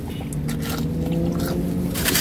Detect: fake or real real